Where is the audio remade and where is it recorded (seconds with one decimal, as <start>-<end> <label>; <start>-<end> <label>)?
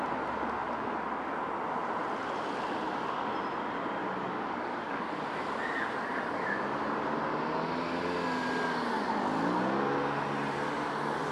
0.0-4.0 recorded; 4.0-5.1 remade; 5.1-11.3 recorded